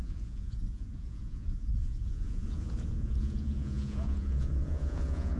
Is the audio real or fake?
fake